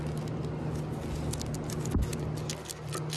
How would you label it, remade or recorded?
recorded